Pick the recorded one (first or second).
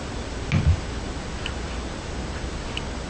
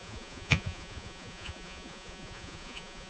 first